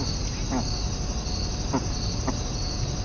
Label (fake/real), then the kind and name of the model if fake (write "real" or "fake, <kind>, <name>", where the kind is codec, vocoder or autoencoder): real